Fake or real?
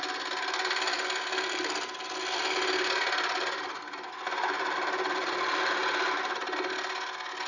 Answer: real